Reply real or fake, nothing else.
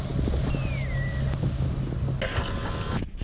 real